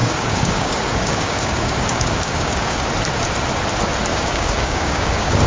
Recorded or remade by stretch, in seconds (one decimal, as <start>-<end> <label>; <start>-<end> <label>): 0.0-2.9 remade; 2.9-4.1 recorded; 4.1-5.5 remade